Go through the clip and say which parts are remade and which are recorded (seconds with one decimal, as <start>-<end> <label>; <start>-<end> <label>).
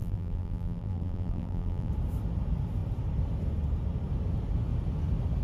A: 0.0-1.9 remade; 1.9-5.4 recorded